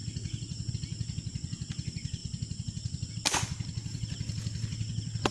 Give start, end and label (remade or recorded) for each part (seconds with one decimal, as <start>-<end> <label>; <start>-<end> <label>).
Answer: 0.0-5.3 recorded